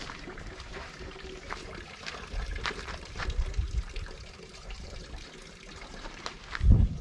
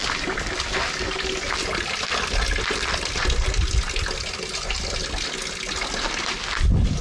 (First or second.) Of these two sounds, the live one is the second